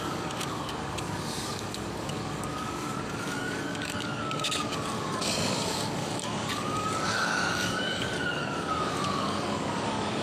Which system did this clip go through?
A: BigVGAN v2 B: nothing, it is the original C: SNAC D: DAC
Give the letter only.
D